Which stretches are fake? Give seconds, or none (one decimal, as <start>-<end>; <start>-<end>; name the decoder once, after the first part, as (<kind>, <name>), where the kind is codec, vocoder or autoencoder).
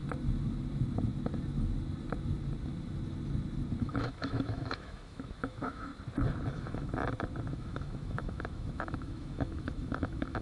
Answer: 3.8-5.9 (autoencoder, DAC-VAE); 6.5-6.9; 7.5-10.4